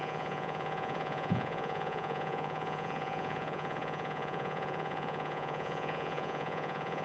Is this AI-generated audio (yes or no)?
yes